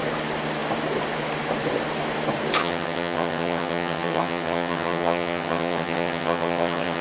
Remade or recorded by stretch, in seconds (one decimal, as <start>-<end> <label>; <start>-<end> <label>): 0.0-2.6 recorded; 2.6-7.0 remade